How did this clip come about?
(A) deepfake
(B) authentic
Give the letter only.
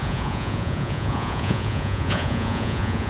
A